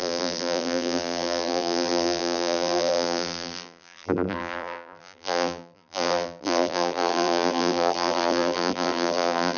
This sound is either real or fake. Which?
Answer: fake